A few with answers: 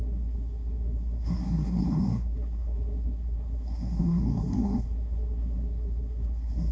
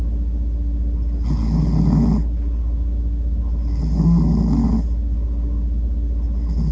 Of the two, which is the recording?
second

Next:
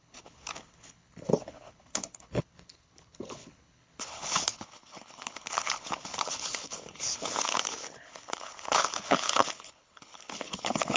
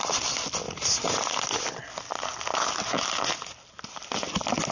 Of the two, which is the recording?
second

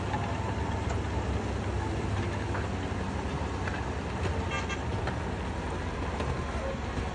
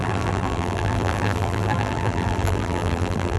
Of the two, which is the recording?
first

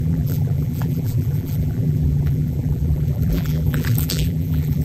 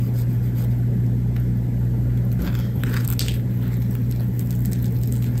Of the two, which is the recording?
second